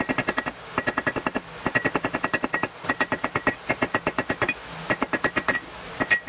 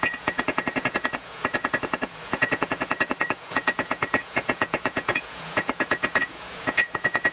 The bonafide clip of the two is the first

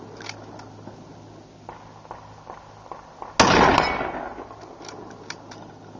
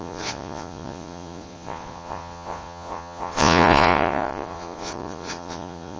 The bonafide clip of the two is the first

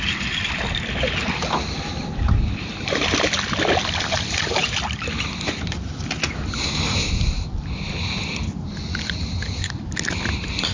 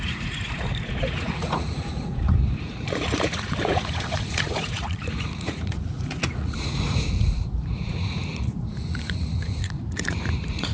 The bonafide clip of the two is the first